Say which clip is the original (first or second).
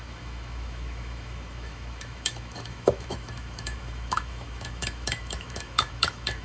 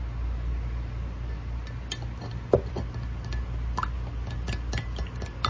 second